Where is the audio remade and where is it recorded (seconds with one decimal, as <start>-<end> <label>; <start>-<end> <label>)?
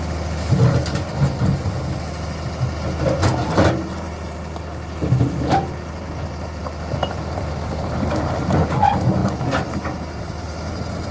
0.0-11.1 recorded